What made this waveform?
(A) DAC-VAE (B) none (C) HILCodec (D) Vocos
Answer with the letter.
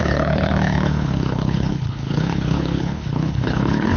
C